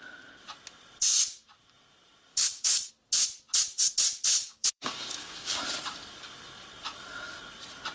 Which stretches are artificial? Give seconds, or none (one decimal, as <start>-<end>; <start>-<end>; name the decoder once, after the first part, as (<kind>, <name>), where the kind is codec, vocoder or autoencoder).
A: 2.3-2.9 (codec, DAC); 4.3-5.6